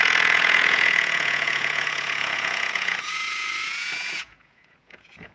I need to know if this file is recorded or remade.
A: remade